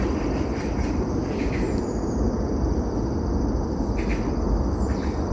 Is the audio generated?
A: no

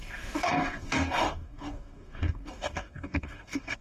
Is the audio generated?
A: yes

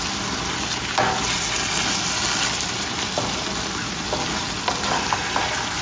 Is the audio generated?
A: no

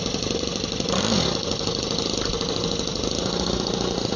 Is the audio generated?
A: no